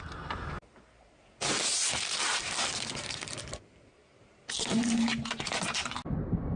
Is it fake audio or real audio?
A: real